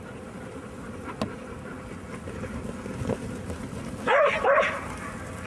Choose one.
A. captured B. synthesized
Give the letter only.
A